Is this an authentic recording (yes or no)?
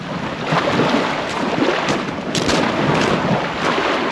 yes